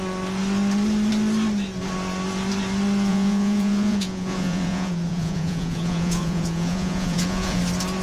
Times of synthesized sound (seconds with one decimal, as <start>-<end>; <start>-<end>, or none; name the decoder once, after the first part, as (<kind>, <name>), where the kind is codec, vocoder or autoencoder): 3.1-7.6 (vocoder, Vocos)